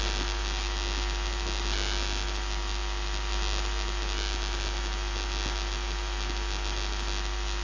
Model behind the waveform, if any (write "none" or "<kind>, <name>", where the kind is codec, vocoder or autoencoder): none